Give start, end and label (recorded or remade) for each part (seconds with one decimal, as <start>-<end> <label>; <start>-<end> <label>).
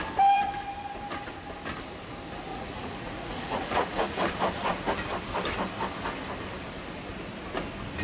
0.0-2.5 recorded; 2.5-4.2 remade; 4.2-8.0 recorded